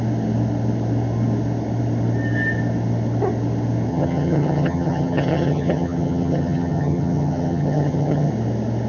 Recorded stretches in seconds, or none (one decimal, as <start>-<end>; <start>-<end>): 0.0-3.9; 8.3-8.9